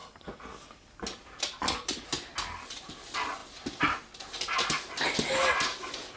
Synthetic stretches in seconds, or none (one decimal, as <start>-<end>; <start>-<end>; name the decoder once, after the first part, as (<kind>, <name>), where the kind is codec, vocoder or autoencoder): none